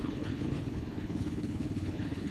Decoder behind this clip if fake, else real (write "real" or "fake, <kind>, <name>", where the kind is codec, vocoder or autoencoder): fake, codec, HILCodec